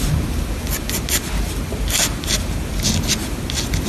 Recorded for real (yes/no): yes